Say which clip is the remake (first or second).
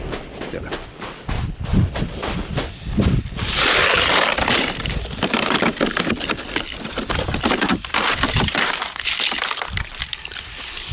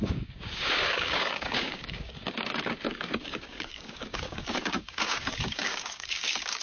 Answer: second